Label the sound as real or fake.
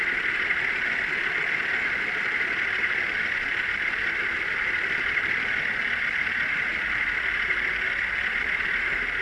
real